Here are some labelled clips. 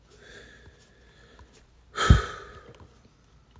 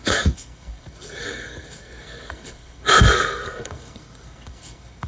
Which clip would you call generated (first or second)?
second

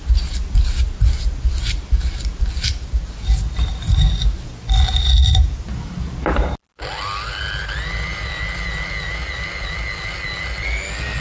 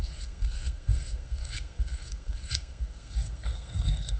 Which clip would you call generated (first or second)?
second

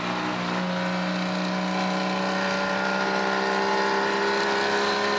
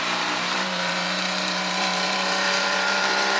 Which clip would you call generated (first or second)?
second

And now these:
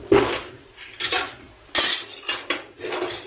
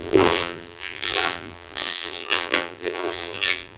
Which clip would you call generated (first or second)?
second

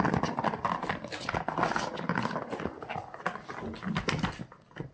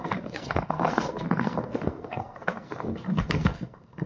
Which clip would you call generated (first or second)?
second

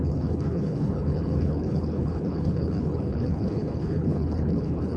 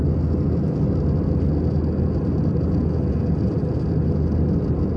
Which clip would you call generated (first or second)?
first